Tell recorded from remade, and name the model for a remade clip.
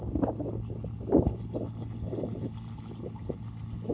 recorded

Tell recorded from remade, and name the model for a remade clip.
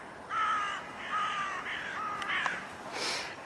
recorded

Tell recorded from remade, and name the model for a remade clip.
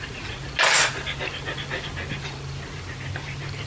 recorded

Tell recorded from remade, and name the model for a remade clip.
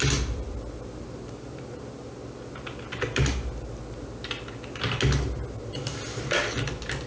recorded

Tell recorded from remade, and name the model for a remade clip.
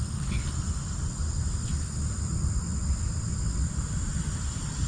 recorded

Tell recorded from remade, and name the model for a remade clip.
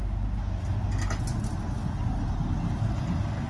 recorded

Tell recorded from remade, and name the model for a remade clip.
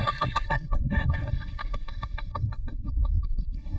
remade, codec, SNAC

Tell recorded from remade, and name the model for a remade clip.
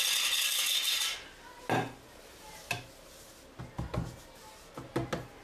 recorded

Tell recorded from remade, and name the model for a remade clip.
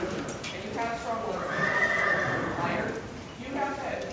remade, vocoder, BigVGAN v2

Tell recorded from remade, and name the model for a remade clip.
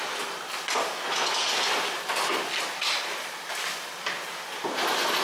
recorded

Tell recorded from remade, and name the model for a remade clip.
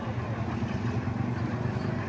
recorded